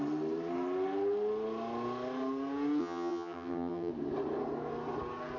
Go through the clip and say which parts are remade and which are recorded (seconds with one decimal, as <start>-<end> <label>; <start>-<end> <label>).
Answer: 0.0-2.8 recorded; 2.8-3.9 remade; 3.9-5.4 recorded